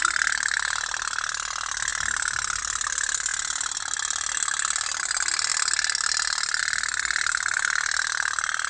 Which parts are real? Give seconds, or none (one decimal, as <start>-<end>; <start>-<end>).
0.0-8.7